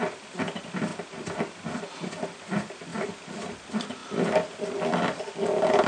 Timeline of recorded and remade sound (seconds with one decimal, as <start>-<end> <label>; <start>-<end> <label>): 0.0-0.9 remade; 0.9-1.8 recorded; 1.8-5.9 remade